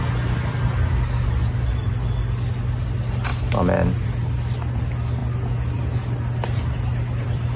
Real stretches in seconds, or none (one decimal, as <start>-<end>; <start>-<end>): 0.0-7.6